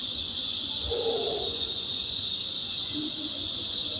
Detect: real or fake fake